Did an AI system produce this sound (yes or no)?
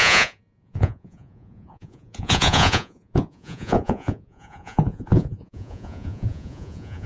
yes